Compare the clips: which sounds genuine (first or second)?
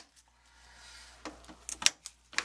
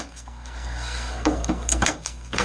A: first